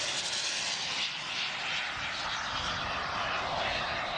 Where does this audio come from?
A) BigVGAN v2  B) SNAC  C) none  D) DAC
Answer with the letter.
C